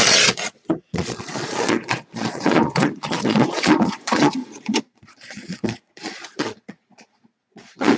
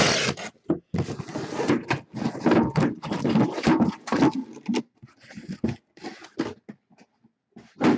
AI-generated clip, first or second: first